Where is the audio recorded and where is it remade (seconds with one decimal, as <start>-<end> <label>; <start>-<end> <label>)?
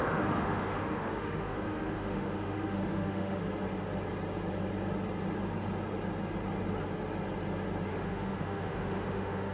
0.0-3.4 remade; 3.4-7.9 recorded; 7.9-9.5 remade